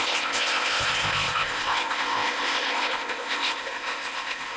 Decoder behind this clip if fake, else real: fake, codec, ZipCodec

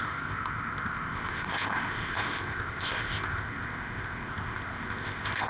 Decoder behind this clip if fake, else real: fake, codec, ZipCodec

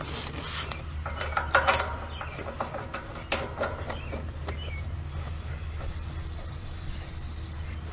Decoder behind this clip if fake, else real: real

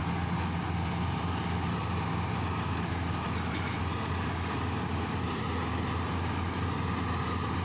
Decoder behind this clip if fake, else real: real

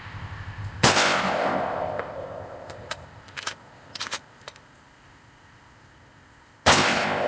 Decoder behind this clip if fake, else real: fake, codec, ZipCodec